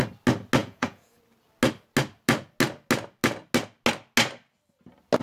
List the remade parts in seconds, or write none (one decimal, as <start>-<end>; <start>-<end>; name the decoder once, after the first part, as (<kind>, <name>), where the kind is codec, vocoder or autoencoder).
0.6-1.2 (vocoder, Vocos)